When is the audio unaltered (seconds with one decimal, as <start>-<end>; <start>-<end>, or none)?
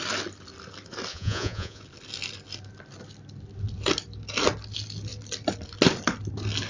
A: 0.0-1.1; 1.8-6.7